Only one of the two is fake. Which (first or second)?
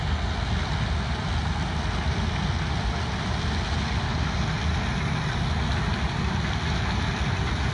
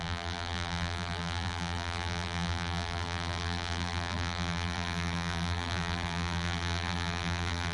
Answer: second